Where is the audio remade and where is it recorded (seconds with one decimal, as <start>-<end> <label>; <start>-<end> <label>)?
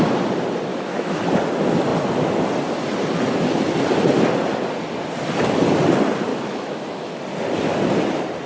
0.0-0.7 recorded; 0.7-1.2 remade; 1.2-6.3 recorded; 6.3-7.2 remade; 7.2-8.5 recorded